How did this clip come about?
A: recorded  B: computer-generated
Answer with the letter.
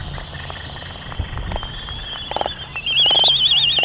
A